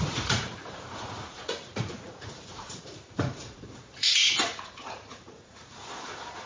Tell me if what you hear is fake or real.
fake